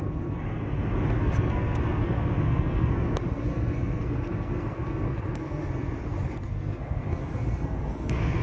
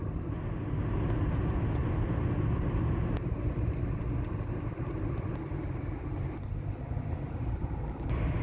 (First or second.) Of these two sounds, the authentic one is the second